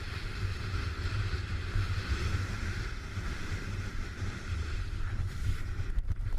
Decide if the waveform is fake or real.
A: fake